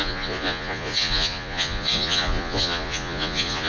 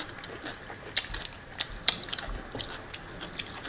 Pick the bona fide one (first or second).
second